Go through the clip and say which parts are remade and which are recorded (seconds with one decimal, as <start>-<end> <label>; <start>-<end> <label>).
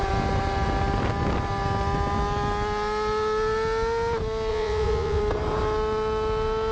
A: 0.0-4.5 recorded; 4.5-5.2 remade; 5.2-6.7 recorded